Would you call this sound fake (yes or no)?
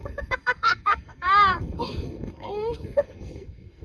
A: yes